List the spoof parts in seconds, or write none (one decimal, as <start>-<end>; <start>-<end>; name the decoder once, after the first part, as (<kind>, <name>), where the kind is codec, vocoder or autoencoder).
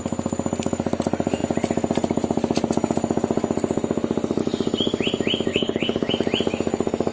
5.5-6.1 (codec, HILCodec)